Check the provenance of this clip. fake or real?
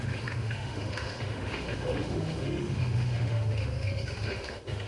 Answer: fake